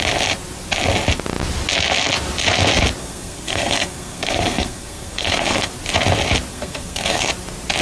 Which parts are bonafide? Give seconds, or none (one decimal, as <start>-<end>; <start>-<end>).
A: 0.0-3.0; 5.7-6.5; 7.3-7.8